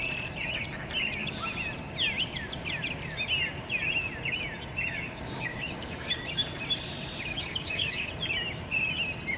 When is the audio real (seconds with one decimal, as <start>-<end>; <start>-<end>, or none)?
0.0-4.9; 6.1-7.3; 8.1-9.4